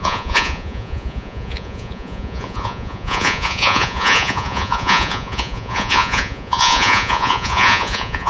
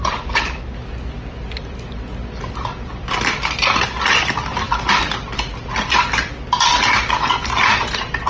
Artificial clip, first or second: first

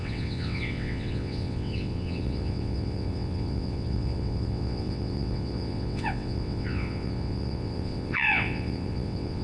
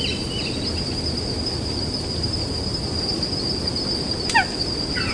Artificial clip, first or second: first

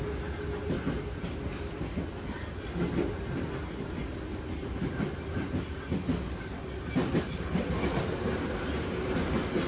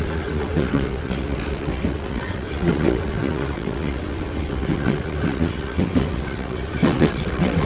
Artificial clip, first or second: second